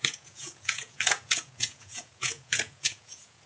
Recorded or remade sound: remade